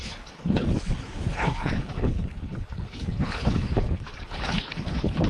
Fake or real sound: fake